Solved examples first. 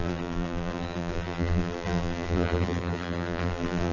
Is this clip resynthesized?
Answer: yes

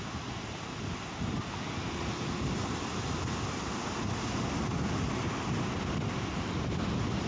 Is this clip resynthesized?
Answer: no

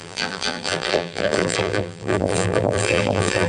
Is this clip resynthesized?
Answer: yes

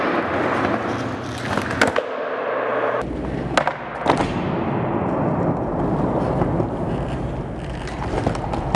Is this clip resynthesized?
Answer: no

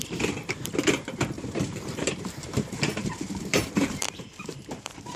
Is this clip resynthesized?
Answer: yes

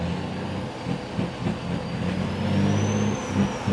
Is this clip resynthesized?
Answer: no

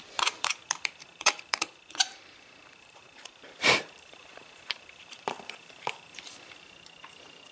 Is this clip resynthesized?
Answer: yes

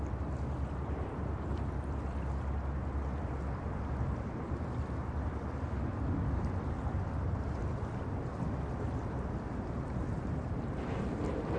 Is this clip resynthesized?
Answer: yes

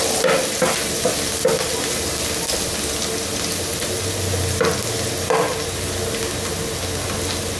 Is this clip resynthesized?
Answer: no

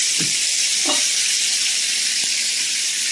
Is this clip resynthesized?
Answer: no